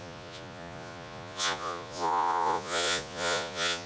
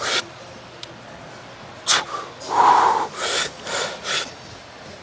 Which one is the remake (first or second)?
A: first